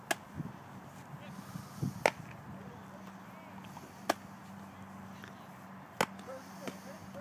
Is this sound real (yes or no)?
yes